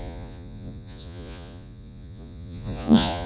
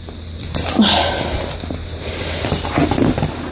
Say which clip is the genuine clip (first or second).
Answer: second